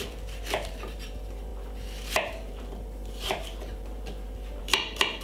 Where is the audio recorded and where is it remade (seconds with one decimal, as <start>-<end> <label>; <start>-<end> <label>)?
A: 0.0-5.2 remade